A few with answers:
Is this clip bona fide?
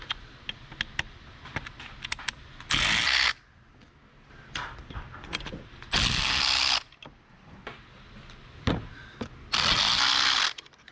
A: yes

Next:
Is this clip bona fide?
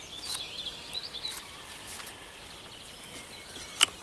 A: yes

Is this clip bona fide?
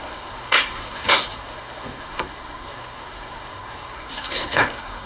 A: no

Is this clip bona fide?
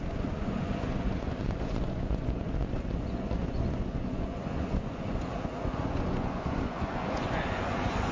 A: no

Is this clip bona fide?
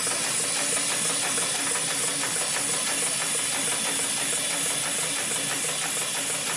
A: yes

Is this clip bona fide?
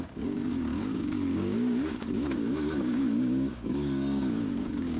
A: no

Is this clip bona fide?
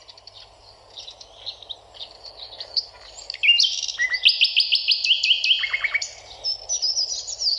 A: yes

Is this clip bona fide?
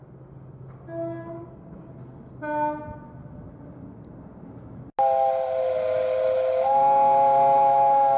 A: yes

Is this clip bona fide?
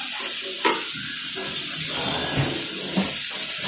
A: yes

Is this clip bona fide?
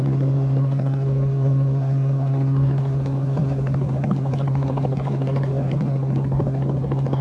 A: no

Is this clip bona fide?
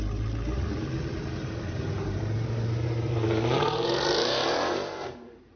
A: no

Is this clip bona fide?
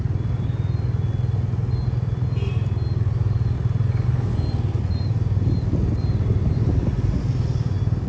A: yes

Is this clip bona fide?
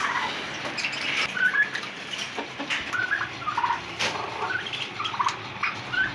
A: yes